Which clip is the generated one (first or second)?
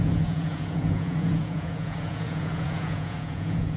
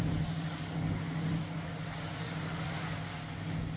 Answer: first